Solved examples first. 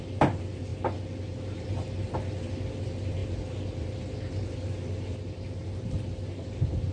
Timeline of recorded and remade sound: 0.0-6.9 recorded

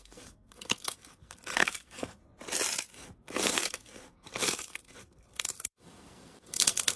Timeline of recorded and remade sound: 0.0-2.2 remade; 2.2-2.9 recorded; 2.9-7.0 remade

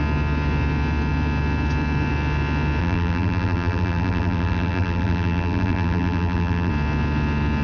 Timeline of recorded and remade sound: 0.0-2.8 recorded; 2.8-6.7 remade; 6.7-7.6 recorded